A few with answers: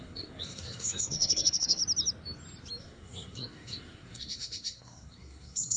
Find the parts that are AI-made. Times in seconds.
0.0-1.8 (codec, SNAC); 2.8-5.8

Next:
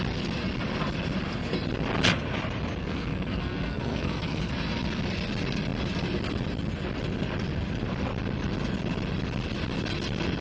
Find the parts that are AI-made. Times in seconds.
2.8-4.5 (codec, SNAC)

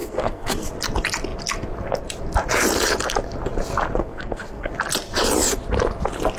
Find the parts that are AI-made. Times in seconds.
0.0-0.7 (codec, SNAC); 4.0-4.7